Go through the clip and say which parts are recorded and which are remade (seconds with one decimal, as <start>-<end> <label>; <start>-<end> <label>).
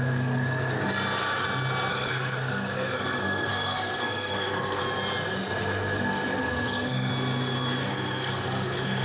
0.0-0.8 remade; 0.8-1.9 recorded; 1.9-4.8 remade; 4.8-6.4 recorded; 6.4-7.1 remade; 7.1-7.9 recorded; 7.9-9.0 remade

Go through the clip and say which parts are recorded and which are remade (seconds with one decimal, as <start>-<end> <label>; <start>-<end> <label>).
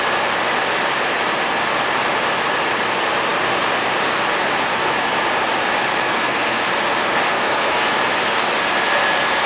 0.0-6.0 recorded; 6.0-6.6 remade; 6.6-7.3 recorded; 7.3-7.9 remade; 7.9-9.5 recorded